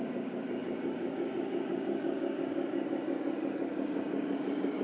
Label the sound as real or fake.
fake